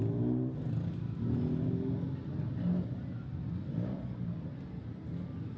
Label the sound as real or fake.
real